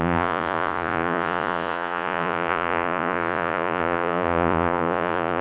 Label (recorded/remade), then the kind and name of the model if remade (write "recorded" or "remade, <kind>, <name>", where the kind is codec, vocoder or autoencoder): remade, vocoder, Vocos